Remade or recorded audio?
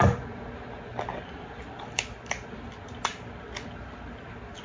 recorded